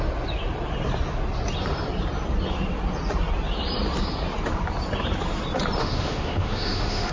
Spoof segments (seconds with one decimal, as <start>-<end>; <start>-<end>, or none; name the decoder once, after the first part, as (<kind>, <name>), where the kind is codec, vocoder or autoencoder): 5.8-7.1 (autoencoder, DAC-VAE)